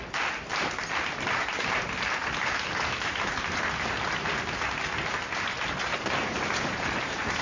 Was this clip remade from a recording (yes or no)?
no